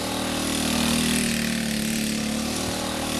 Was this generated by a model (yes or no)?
no